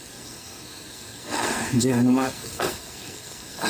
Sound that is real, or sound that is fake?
fake